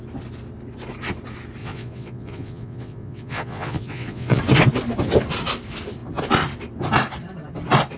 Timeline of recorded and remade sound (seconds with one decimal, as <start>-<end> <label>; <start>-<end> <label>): 0.0-1.6 recorded; 1.6-4.4 remade; 4.4-8.0 recorded